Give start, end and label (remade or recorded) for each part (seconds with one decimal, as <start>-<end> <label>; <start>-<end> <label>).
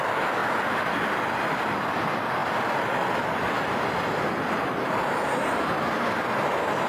0.0-6.9 recorded